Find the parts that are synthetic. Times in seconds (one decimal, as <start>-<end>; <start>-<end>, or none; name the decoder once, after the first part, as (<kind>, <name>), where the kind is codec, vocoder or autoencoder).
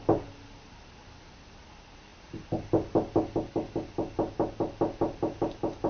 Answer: none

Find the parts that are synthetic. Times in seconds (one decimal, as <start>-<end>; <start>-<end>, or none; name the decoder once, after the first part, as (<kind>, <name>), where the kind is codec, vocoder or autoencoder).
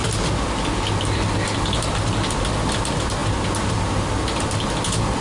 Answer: none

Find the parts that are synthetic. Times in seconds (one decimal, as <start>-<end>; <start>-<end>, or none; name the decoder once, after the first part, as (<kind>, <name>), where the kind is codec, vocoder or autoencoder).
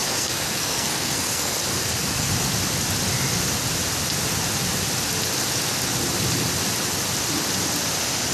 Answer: 0.0-2.3 (codec, SNAC)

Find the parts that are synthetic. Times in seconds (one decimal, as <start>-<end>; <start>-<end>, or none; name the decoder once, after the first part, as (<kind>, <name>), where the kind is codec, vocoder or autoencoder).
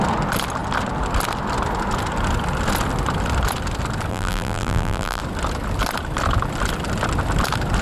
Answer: 4.1-5.2 (vocoder, BigVGAN v2)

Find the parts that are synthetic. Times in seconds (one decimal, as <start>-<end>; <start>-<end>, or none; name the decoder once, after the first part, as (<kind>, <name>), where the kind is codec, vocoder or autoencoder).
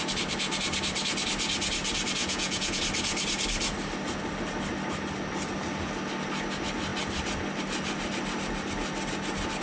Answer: 2.2-2.8 (vocoder, Vocos)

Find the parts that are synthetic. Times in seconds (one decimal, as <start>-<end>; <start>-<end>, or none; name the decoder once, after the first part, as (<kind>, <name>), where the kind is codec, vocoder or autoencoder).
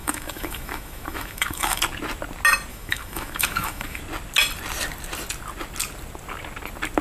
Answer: 0.0-1.8 (autoencoder, DAC-VAE); 2.7-4.0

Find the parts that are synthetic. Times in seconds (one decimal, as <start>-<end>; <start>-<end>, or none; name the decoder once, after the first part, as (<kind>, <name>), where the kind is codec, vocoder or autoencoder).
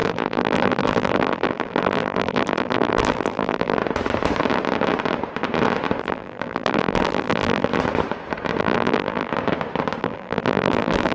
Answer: 0.0-3.8 (vocoder, BigVGAN v2); 6.0-7.7; 8.6-9.3; 10.0-11.1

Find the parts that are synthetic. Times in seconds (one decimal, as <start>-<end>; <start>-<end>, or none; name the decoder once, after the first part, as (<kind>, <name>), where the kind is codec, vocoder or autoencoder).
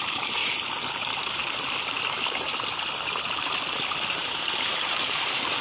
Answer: 0.0-0.4 (vocoder, BigVGAN v2); 0.9-1.4; 3.9-5.6